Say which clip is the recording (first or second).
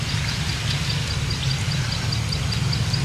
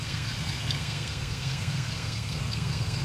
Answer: first